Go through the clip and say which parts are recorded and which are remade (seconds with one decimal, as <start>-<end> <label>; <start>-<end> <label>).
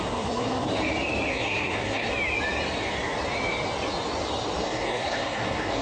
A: 0.0-0.7 remade; 0.7-1.3 recorded; 1.3-2.1 remade; 2.1-4.6 recorded; 4.6-5.8 remade